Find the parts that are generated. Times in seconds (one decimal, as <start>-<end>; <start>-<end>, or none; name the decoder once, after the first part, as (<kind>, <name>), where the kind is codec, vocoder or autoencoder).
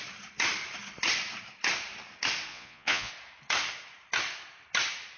2.5-3.1 (vocoder, Vocos)